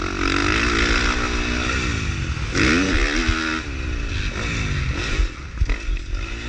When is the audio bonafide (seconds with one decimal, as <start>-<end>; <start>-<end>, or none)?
0.0-6.5